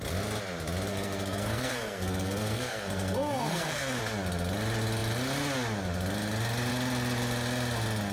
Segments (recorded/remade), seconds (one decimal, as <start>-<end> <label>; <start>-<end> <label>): 0.0-0.9 recorded; 0.9-4.0 remade; 4.0-8.1 recorded